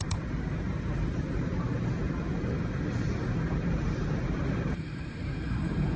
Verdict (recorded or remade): remade